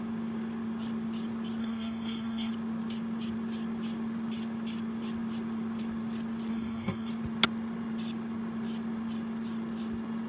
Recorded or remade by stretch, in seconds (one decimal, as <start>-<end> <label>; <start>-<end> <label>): 0.0-1.6 recorded; 1.6-2.5 remade; 2.5-6.5 recorded; 6.5-7.1 remade; 7.1-10.3 recorded